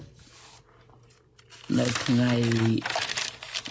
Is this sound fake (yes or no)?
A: no